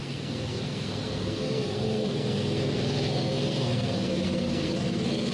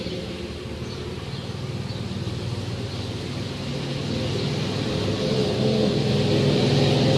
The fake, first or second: first